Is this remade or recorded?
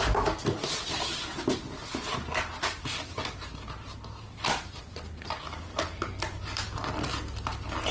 recorded